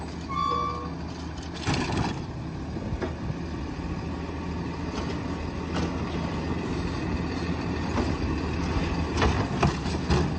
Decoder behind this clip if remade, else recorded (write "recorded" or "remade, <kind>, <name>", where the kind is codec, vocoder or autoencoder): recorded